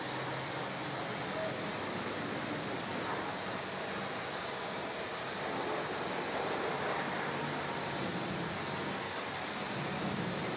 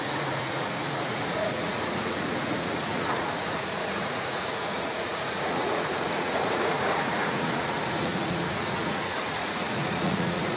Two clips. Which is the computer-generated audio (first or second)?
second